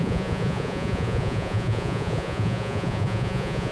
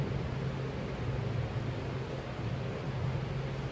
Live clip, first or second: second